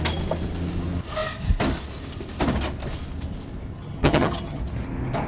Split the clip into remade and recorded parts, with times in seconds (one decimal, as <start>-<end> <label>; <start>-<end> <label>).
0.0-3.8 recorded; 3.8-4.6 remade; 4.6-5.3 recorded